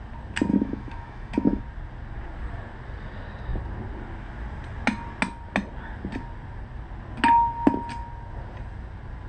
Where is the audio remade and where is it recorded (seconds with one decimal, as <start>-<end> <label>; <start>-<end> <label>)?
0.0-0.5 recorded; 0.5-1.6 remade; 1.6-9.3 recorded